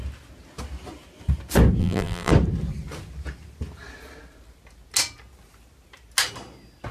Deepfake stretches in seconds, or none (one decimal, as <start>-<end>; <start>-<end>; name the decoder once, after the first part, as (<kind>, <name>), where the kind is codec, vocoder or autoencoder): 1.8-2.3 (vocoder, BigVGAN v2)